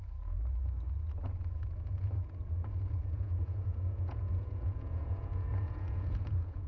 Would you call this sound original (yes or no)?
no